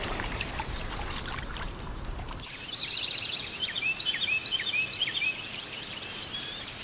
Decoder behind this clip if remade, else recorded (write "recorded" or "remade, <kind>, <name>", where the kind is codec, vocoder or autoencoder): remade, vocoder, BigVGAN v2